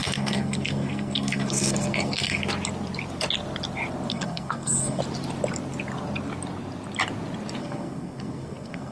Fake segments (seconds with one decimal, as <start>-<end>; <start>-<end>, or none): 0.0-2.4; 4.1-5.0; 7.6-8.9